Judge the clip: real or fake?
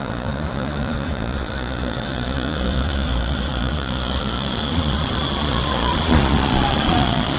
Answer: fake